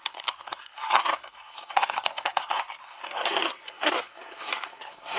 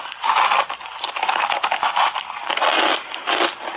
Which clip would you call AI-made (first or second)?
first